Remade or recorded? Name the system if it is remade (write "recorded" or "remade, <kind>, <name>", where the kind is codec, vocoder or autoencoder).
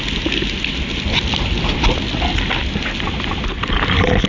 recorded